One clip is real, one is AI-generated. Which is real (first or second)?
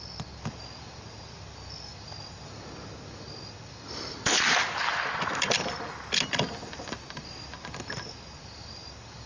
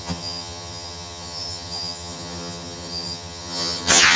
first